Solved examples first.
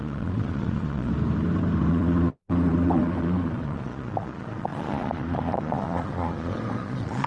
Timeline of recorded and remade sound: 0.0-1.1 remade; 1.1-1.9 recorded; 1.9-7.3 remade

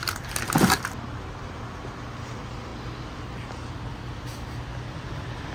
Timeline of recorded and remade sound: 0.0-5.5 recorded

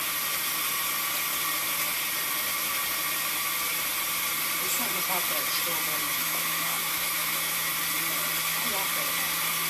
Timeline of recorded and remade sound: 0.0-6.1 recorded; 6.1-7.7 remade; 7.7-9.7 recorded

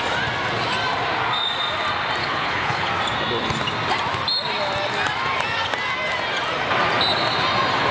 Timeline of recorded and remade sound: 0.0-2.2 recorded; 2.2-2.9 remade; 2.9-7.9 recorded

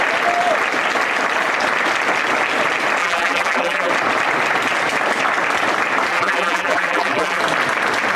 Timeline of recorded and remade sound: 0.0-3.0 recorded; 3.0-3.9 remade; 3.9-6.1 recorded; 6.1-7.4 remade; 7.4-8.2 recorded

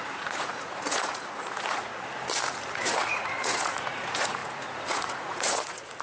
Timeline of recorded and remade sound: 0.0-1.9 remade; 1.9-2.7 recorded; 2.7-6.0 remade

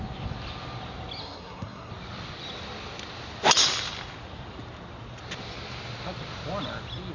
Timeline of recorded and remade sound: 0.0-1.2 recorded; 1.2-1.9 remade; 1.9-7.1 recorded

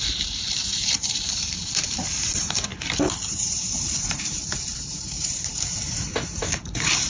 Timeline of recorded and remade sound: 0.0-2.7 remade; 2.7-3.3 recorded; 3.3-7.1 remade